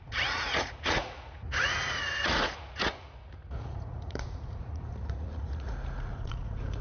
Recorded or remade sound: remade